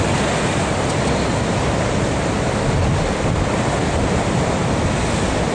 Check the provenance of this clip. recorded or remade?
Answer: recorded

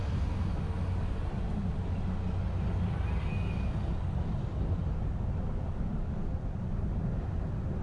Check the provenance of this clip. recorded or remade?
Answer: recorded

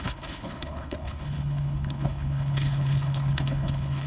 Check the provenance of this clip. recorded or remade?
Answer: remade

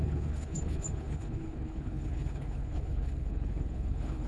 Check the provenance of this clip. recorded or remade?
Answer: remade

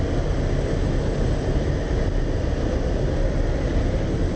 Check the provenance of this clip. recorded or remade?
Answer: recorded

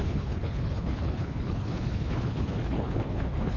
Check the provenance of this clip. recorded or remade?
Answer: remade